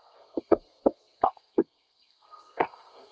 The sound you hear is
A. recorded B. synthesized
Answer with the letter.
B